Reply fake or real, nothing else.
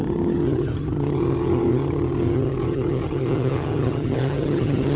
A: fake